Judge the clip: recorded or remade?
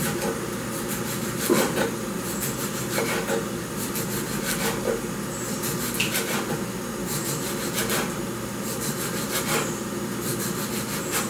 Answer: recorded